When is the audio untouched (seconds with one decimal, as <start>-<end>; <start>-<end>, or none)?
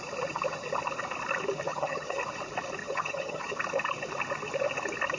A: 0.0-1.7; 2.2-2.8; 3.5-5.2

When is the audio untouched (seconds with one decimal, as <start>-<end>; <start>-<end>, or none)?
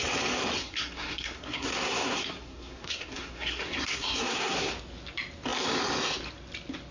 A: 0.0-0.6; 4.7-6.9